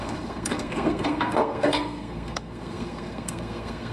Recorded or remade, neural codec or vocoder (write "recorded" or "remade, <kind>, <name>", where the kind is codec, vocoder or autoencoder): remade, codec, SNAC